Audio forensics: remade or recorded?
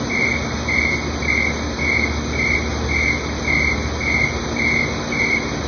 recorded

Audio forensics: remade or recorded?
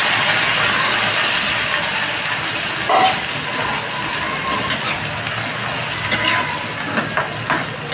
recorded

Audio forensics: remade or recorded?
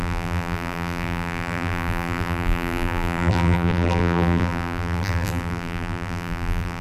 remade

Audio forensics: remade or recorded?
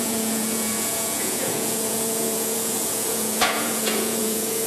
remade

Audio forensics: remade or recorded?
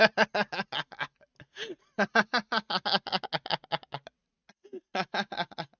recorded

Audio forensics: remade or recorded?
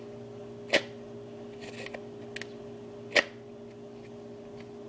recorded